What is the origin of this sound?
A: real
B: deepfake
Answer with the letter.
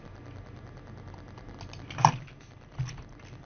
A